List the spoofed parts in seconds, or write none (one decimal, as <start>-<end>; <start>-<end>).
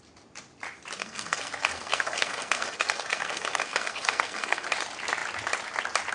1.0-4.7